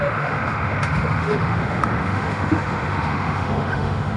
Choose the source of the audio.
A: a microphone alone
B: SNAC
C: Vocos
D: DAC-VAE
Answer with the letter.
D